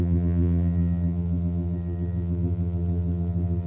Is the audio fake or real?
fake